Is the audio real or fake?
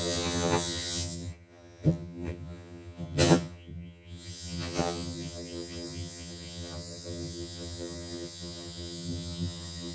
fake